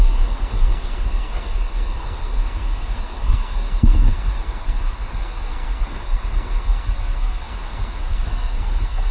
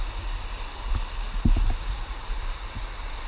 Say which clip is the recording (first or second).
second